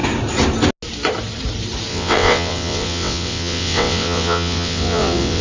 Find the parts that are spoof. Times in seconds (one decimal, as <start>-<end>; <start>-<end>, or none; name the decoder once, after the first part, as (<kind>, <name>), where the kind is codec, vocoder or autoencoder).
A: 1.9-5.4 (vocoder, WaveNeXt)